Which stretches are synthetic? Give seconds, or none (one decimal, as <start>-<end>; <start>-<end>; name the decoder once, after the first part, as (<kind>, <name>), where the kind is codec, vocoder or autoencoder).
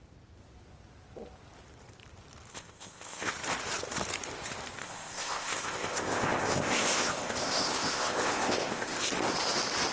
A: 2.5-3.3 (codec, ZipCodec); 4.8-9.1